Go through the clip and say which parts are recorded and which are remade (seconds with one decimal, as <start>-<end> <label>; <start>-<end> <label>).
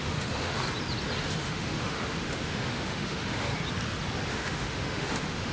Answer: 0.0-0.6 remade; 0.6-1.2 recorded; 1.2-3.5 remade; 3.5-4.3 recorded; 4.3-5.5 remade